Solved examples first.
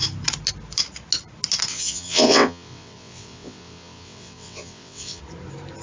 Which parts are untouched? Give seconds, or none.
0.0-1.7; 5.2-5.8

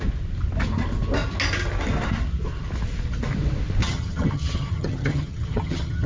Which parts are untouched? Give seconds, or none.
0.0-3.8

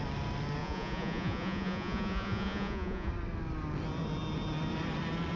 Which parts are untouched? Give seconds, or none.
0.0-0.6; 3.1-5.4

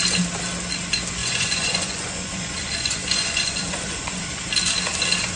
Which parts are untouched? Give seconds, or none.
0.0-1.2; 4.4-5.4

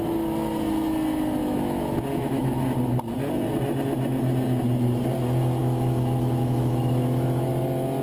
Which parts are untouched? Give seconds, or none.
0.0-1.4; 2.6-5.6; 7.5-8.0

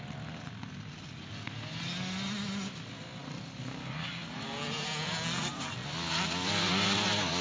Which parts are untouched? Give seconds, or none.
0.0-7.4

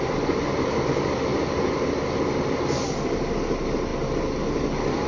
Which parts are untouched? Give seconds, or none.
0.0-5.1

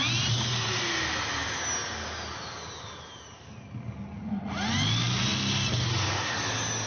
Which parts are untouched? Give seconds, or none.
0.0-6.9